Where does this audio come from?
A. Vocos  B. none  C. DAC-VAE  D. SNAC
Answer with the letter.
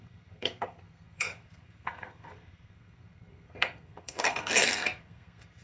D